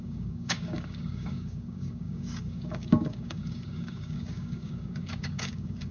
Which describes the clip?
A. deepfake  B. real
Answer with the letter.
A